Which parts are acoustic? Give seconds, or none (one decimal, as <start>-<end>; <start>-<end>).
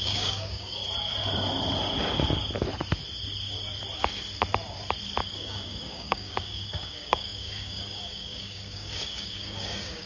0.8-5.2